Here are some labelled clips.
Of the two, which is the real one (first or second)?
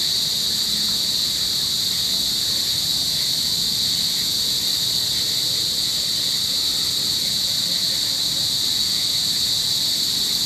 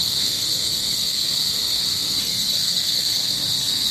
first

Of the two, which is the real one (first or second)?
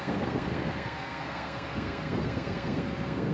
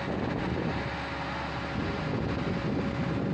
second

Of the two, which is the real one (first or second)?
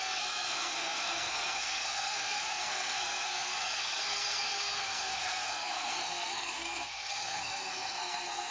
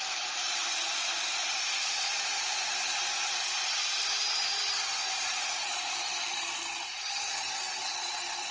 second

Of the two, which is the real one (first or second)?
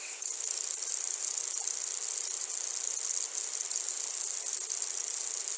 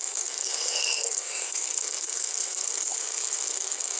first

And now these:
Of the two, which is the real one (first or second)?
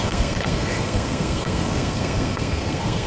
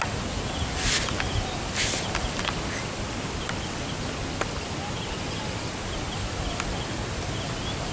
second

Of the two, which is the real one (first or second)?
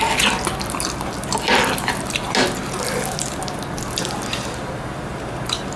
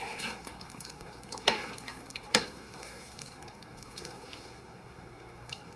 first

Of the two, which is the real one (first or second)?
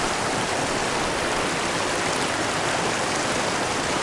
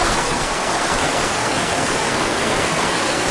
first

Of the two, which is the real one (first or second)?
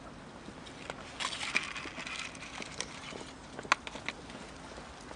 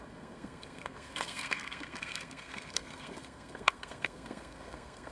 first